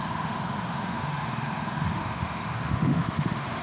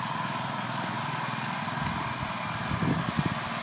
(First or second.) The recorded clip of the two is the second